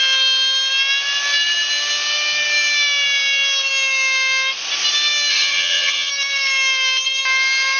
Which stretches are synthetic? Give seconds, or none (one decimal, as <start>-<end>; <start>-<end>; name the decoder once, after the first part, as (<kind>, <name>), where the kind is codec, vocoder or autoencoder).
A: 5.3-6.1 (vocoder, HiFi-GAN)